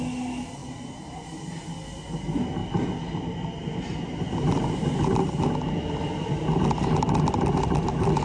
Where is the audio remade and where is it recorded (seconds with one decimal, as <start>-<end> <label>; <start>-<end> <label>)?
0.0-8.2 recorded